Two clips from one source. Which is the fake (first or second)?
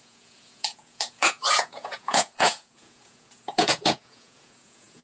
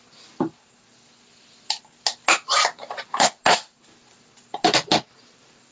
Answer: first